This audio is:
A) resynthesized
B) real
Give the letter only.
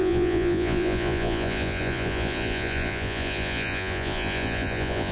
A